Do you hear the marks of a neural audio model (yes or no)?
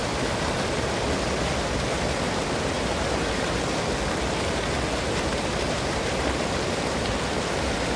no